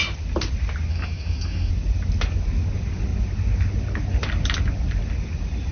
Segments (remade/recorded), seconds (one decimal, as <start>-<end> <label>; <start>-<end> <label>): 0.0-0.9 recorded; 0.9-1.7 remade; 1.7-5.7 recorded